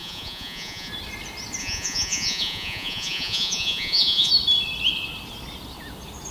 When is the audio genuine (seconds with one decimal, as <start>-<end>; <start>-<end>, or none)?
0.9-1.6; 4.3-6.3